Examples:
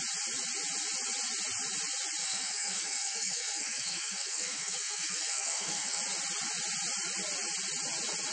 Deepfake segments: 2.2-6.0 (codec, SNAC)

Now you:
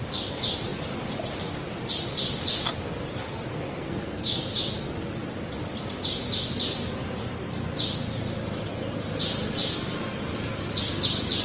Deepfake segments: 3.5-4.6 (codec, SNAC)

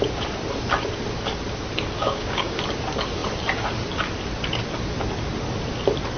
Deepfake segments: 2.0-2.6 (codec, DAC)

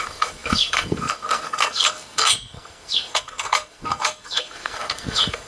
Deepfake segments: 0.0-5.5 (codec, SNAC)

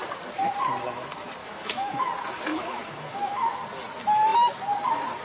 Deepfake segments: 1.4-2.1 (autoencoder, DAC-VAE); 2.5-3.5